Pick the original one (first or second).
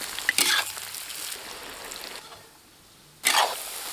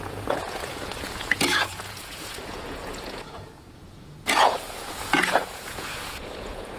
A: first